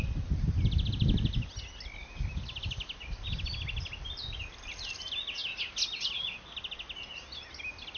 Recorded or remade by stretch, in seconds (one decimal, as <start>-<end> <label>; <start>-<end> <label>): 0.0-8.0 recorded